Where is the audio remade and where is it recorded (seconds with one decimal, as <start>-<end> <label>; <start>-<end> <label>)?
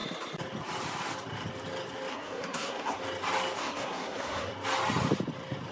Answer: 0.0-2.1 recorded; 2.1-3.0 remade; 3.0-3.6 recorded; 3.6-4.5 remade; 4.5-5.7 recorded